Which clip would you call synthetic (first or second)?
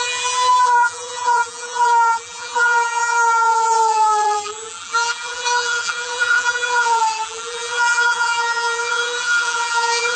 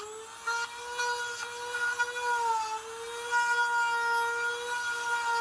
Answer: first